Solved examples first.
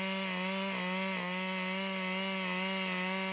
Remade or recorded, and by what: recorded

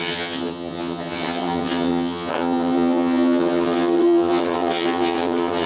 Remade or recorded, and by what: remade, vocoder, HiFi-GAN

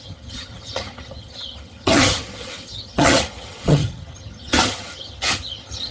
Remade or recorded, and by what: remade, vocoder, HiFi-GAN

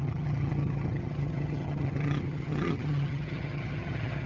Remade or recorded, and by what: remade, vocoder, HiFi-GAN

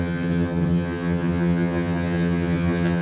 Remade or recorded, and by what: remade, vocoder, HiFi-GAN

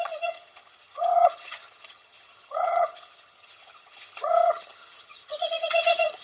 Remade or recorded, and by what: remade, vocoder, HiFi-GAN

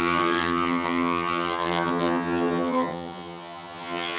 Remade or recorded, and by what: remade, vocoder, HiFi-GAN